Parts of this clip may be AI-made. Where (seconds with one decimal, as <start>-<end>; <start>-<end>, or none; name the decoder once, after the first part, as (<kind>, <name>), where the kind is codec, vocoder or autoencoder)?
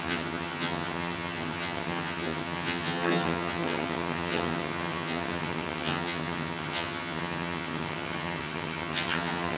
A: 0.0-9.6 (vocoder, HiFi-GAN)